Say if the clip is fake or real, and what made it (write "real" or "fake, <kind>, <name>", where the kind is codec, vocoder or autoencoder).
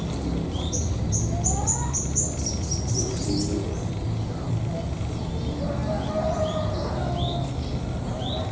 real